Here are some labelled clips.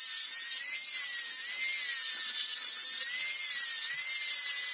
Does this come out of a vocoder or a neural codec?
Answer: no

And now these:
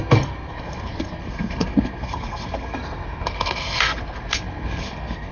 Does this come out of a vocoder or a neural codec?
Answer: yes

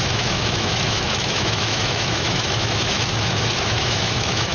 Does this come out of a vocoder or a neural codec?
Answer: yes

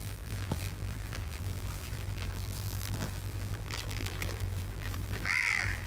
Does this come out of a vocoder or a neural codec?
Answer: yes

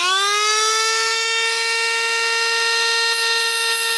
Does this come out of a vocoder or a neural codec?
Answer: yes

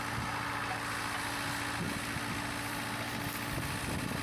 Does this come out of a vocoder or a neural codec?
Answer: no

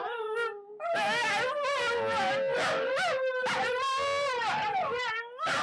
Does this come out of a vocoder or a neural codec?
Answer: no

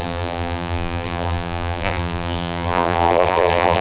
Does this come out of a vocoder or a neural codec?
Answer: yes